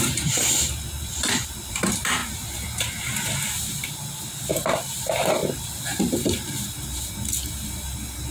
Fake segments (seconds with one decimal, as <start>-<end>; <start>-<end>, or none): 0.0-2.2; 3.0-8.3